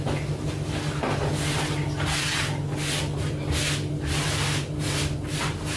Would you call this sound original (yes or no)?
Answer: yes